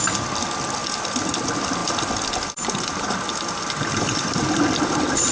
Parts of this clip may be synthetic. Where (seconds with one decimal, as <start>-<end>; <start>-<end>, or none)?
0.8-1.4; 1.8-5.3